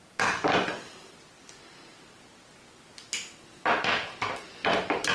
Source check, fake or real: real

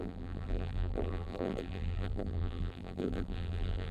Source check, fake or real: fake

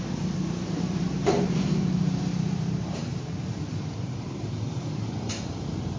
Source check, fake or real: fake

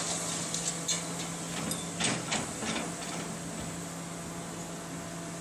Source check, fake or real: real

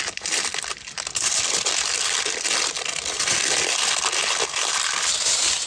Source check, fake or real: real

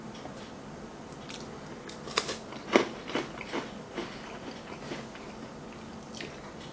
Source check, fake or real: real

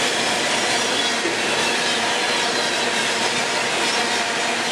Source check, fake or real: real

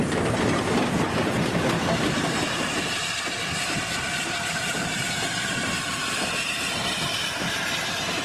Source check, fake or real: fake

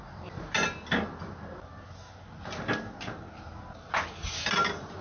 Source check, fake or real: real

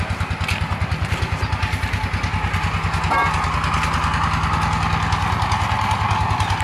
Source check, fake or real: real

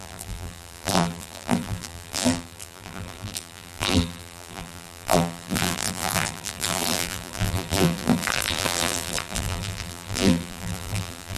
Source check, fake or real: fake